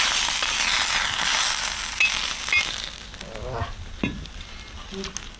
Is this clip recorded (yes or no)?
yes